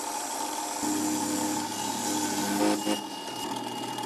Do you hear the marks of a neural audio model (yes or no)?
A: no